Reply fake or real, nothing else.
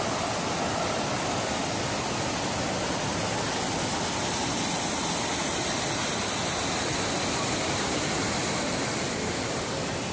real